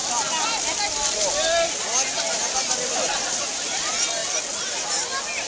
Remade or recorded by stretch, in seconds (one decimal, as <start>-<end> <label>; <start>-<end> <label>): 0.0-5.5 recorded